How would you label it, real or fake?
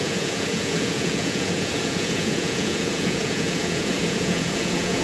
fake